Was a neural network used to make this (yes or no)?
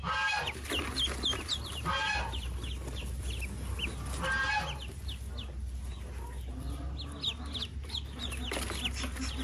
no